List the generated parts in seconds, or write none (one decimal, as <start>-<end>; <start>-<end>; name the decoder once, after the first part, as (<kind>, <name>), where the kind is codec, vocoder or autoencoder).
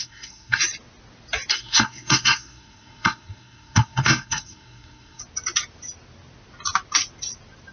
0.0-0.6 (codec, SNAC); 1.5-5.2